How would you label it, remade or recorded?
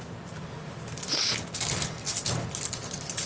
recorded